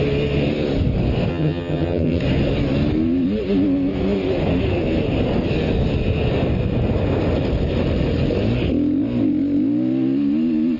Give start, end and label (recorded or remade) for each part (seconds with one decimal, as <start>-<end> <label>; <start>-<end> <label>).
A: 0.0-1.3 recorded; 1.3-2.2 remade; 2.2-10.8 recorded